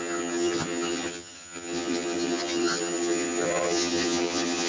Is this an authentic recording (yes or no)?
no